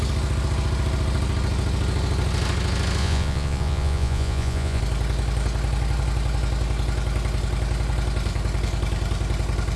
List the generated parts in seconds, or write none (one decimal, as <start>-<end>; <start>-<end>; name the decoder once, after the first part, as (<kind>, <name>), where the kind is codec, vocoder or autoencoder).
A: 3.0-4.8 (vocoder, Vocos)